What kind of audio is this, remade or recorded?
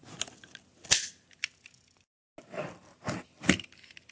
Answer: recorded